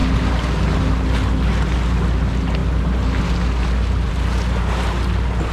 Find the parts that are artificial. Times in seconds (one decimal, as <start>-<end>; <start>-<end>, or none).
none